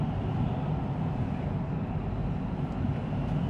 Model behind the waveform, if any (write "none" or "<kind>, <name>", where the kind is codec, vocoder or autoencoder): none